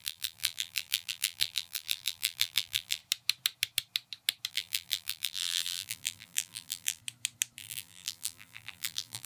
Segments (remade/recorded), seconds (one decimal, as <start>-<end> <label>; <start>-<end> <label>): 0.0-3.0 remade; 3.0-4.5 recorded; 4.5-7.0 remade; 7.0-7.6 recorded; 7.6-9.3 remade